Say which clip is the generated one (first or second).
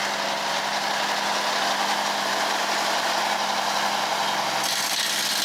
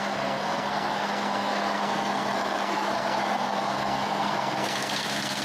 second